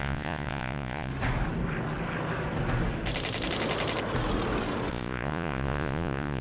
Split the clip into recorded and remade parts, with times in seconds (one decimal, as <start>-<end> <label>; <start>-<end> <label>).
0.0-1.1 remade; 1.1-4.9 recorded; 4.9-6.4 remade